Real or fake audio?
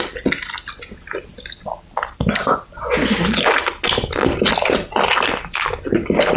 real